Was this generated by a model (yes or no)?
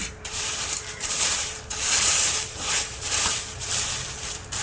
yes